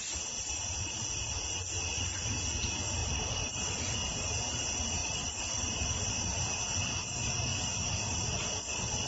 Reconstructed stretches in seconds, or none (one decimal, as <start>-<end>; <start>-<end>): 3.0-3.9; 5.0-6.1; 7.5-8.6